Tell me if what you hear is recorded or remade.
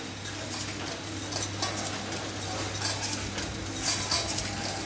recorded